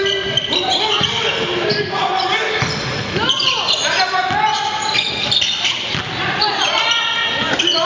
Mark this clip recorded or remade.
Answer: recorded